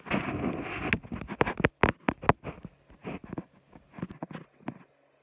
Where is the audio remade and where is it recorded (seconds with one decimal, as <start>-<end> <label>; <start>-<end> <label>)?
0.0-3.0 recorded; 3.0-3.7 remade; 3.7-5.2 recorded